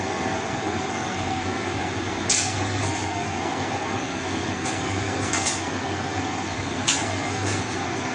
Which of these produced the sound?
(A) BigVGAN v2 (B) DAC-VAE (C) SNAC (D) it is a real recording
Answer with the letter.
C